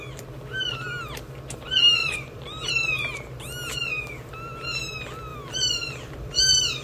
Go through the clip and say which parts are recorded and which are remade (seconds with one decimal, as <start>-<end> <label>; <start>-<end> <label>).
0.0-2.0 recorded; 2.0-2.9 remade; 2.9-5.3 recorded; 5.3-6.3 remade; 6.3-6.8 recorded